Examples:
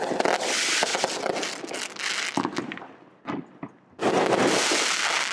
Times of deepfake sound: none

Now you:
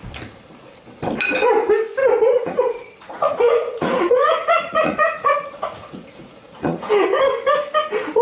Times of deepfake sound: 2.0-6.9 (vocoder, Vocos)

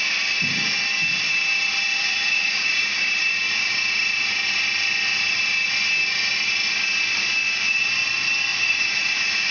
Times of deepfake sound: 2.0-3.4 (vocoder, Vocos); 8.5-9.5